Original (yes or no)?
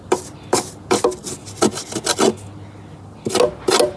yes